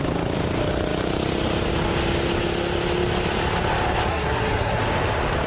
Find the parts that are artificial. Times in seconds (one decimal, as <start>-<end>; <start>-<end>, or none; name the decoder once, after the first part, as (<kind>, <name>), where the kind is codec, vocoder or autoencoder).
4.1-4.8 (codec, SNAC)

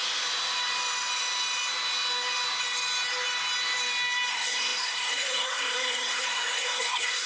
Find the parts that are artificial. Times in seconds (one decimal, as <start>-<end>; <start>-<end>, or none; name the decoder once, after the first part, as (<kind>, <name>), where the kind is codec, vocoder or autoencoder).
4.3-7.3 (codec, SNAC)

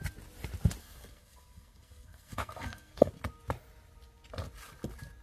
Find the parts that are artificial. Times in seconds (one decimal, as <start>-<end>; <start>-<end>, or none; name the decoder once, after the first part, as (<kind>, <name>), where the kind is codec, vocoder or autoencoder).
0.8-3.1 (codec, SNAC)

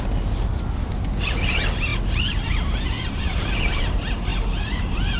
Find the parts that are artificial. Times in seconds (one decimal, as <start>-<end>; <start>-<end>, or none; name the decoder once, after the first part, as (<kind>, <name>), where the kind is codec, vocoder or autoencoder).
none

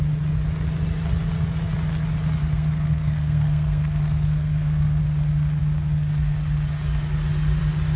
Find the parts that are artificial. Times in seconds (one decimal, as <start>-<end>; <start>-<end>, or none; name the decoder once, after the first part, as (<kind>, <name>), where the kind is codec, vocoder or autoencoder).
2.4-5.0 (codec, SNAC)

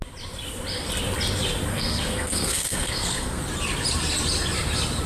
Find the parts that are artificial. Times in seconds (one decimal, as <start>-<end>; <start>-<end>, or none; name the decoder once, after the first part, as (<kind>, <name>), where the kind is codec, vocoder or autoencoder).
1.7-3.4 (codec, SNAC)